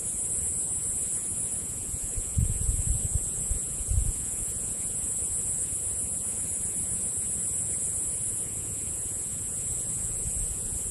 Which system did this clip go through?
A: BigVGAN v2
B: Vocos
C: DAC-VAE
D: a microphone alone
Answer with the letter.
B